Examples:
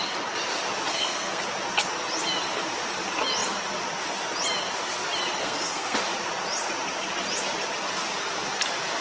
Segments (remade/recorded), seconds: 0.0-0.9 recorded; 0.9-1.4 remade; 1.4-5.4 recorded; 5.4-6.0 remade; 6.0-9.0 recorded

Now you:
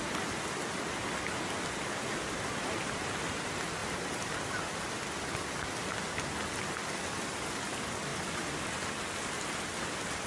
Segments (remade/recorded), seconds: 0.0-10.3 recorded

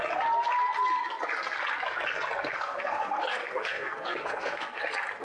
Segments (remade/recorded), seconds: 0.0-2.5 recorded; 2.5-4.8 remade; 4.8-5.2 recorded

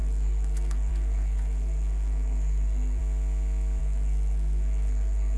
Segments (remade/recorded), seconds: 0.0-3.0 remade; 3.0-3.8 recorded; 3.8-5.4 remade

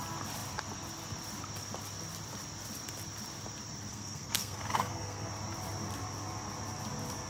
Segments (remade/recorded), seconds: 0.0-3.9 recorded; 3.9-5.3 remade; 5.3-7.3 recorded

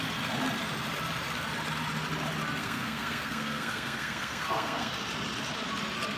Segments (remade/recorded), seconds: 0.0-2.6 recorded; 2.6-4.9 remade; 4.9-6.2 recorded